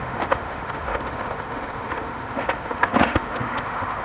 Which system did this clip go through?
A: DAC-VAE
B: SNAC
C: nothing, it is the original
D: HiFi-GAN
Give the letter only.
A